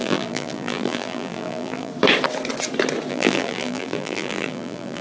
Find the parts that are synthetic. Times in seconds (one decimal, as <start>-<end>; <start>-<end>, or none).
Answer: 0.0-1.9; 3.1-5.0

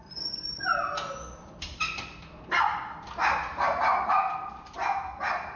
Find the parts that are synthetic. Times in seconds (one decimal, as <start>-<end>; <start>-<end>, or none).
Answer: 0.0-0.7; 4.1-4.8